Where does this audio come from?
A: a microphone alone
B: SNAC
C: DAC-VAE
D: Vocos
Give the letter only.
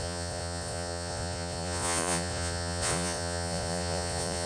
D